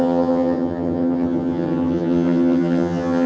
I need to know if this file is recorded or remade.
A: remade